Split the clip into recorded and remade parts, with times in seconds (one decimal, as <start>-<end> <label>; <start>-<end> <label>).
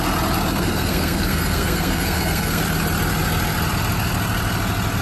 0.0-0.6 recorded; 0.6-2.6 remade; 2.6-5.0 recorded